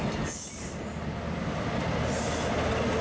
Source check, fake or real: real